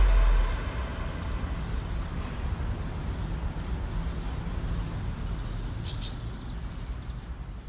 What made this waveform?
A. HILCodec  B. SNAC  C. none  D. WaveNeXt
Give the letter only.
C